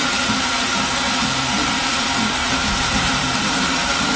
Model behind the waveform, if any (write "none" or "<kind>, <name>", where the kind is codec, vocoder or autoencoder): vocoder, BigVGAN v2